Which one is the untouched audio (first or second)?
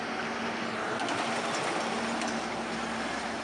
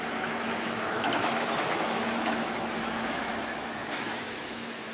first